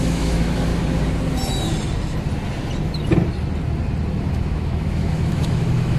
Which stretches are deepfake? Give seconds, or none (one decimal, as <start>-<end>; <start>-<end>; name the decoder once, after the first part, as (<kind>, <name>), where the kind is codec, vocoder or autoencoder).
0.0-0.7 (autoencoder, DAC-VAE); 4.3-6.0